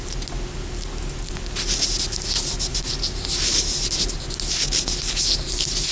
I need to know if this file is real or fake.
real